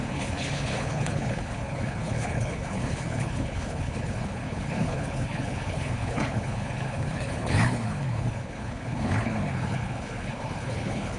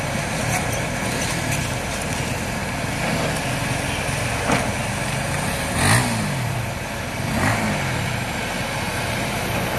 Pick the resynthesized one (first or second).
first